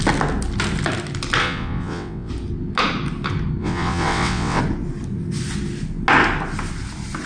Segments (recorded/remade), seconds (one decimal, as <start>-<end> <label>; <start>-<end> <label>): 0.0-1.4 recorded; 1.4-2.3 remade; 2.3-3.6 recorded; 3.6-4.6 remade; 4.6-7.3 recorded